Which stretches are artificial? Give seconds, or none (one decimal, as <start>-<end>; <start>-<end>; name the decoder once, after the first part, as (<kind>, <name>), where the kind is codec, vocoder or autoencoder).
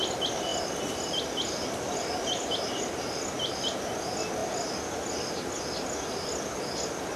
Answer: none